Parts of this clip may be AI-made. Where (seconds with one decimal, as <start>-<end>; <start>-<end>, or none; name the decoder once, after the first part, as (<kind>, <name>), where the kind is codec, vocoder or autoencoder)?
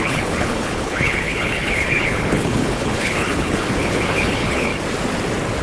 0.0-4.7 (codec, HILCodec)